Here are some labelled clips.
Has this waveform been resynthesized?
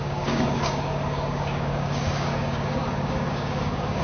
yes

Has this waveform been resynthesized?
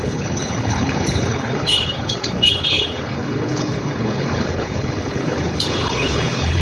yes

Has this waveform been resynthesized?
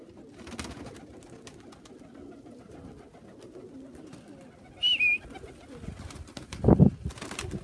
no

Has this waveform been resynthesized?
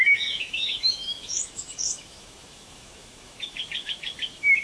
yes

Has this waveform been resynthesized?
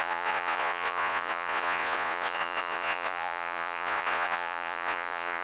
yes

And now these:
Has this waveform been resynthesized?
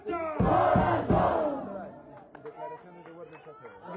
no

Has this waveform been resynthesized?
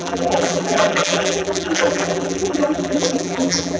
yes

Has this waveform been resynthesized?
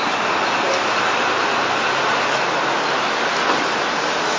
no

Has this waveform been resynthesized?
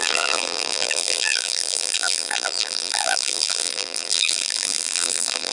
yes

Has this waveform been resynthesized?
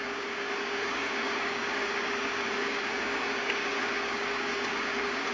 yes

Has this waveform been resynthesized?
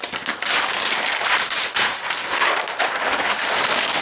no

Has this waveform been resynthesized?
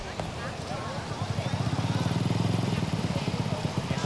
no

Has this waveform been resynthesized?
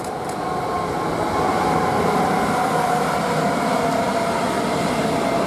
no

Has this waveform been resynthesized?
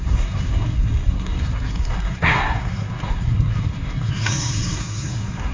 yes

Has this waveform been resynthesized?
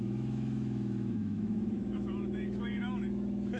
yes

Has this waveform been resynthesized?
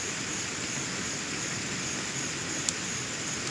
no